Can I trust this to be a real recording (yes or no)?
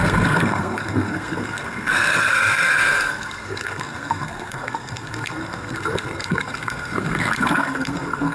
no